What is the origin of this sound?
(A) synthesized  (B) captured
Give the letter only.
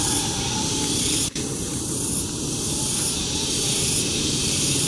A